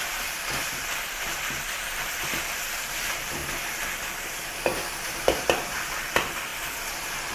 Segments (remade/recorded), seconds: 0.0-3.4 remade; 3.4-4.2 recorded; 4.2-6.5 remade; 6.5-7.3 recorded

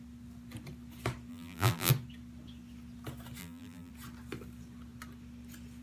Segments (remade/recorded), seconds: 0.0-1.3 recorded; 1.3-1.9 remade; 1.9-3.4 recorded; 3.4-3.9 remade; 3.9-5.8 recorded

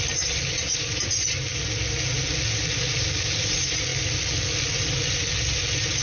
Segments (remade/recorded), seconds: 0.0-6.0 recorded

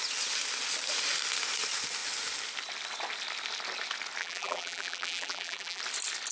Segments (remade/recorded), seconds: 0.0-4.2 recorded; 4.2-5.8 remade; 5.8-6.3 recorded

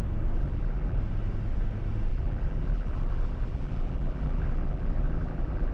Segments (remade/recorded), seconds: 0.0-0.4 recorded; 0.4-1.0 remade; 1.0-2.1 recorded; 2.1-5.7 remade

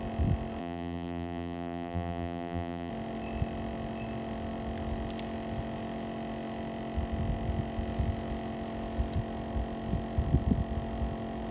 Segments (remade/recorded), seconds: 0.0-0.6 recorded; 0.6-2.9 remade; 2.9-11.5 recorded

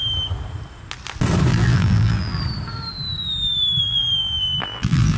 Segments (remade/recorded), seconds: 0.0-1.5 recorded; 1.5-2.4 remade; 2.4-3.9 recorded; 3.9-5.2 remade